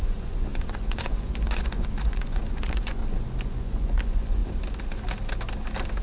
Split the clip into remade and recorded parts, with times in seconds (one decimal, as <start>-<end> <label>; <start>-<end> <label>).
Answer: 0.0-3.0 remade; 3.0-3.5 recorded; 3.5-4.4 remade; 4.4-6.0 recorded